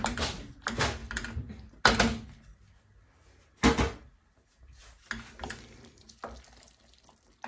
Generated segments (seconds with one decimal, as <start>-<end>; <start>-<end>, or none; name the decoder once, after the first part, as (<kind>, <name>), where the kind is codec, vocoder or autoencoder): none